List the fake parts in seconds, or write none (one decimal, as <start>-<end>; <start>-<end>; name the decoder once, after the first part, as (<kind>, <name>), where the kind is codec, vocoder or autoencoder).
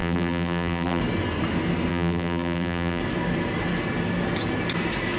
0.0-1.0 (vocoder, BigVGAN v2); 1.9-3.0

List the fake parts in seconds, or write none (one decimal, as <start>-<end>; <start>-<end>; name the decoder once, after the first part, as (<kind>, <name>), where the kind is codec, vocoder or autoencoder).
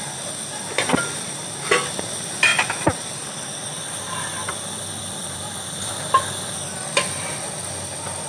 4.4-5.9 (vocoder, BigVGAN v2)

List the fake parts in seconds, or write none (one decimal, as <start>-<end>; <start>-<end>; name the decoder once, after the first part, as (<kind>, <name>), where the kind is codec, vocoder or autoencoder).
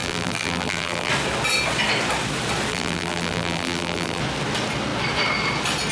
0.0-1.1 (vocoder, BigVGAN v2); 2.7-4.2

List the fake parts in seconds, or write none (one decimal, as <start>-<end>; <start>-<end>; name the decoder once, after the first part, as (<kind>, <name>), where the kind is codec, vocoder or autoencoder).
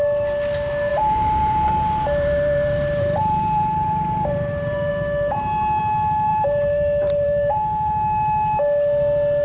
0.9-4.9 (vocoder, BigVGAN v2); 6.3-7.5